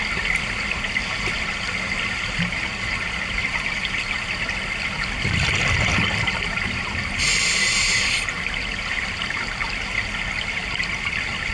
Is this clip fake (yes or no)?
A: no